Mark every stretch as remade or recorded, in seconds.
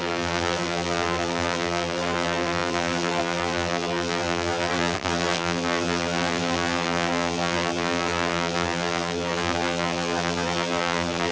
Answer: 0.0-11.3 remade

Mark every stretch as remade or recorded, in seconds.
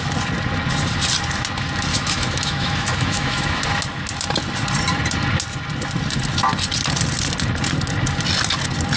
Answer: 0.0-1.9 recorded; 1.9-3.6 remade; 3.6-9.0 recorded